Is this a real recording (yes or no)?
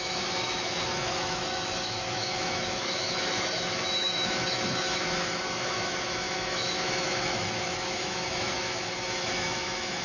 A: no